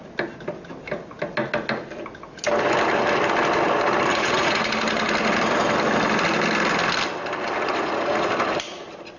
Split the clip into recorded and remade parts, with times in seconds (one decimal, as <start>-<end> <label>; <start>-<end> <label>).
0.0-4.1 recorded; 4.1-4.7 remade; 4.7-7.7 recorded; 7.7-8.3 remade; 8.3-9.2 recorded